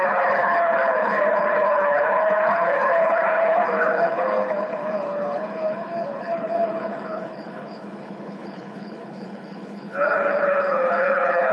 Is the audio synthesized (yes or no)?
yes